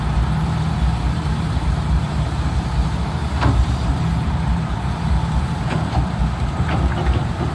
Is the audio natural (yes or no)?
no